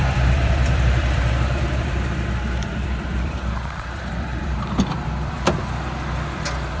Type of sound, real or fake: fake